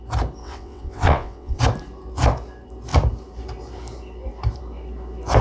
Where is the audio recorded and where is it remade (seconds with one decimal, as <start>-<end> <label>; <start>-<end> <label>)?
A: 0.0-0.4 recorded; 0.4-1.6 remade; 1.6-5.4 recorded